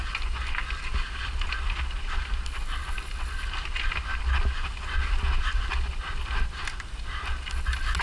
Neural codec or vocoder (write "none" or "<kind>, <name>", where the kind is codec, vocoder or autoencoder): none